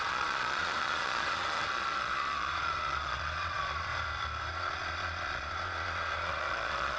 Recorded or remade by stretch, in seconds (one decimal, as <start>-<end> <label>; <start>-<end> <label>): 0.0-3.9 remade; 3.9-4.5 recorded; 4.5-7.0 remade